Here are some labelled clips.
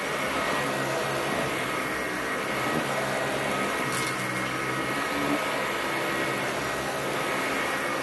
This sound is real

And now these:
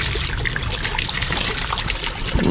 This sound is real